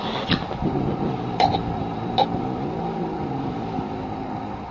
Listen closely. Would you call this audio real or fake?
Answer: real